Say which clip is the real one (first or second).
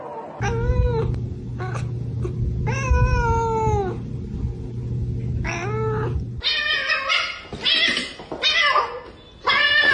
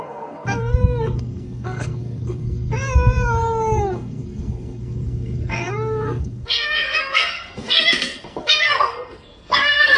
first